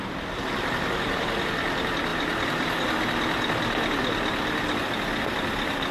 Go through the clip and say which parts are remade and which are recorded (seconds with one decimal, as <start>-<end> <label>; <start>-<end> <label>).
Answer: 0.0-2.1 remade; 2.1-5.9 recorded